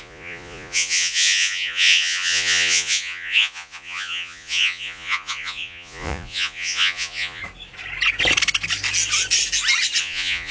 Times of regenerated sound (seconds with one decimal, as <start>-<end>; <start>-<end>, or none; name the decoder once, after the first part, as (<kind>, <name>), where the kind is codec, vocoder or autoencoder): 0.0-7.4 (vocoder, Vocos); 10.0-10.5